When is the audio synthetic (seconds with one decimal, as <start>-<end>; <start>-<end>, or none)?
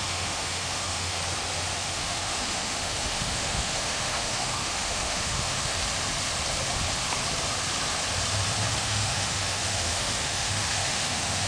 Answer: 0.0-1.2; 1.8-5.8; 8.7-11.5